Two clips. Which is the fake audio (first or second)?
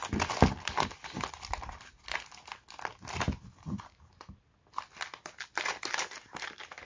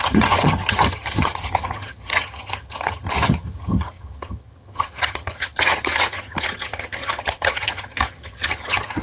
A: second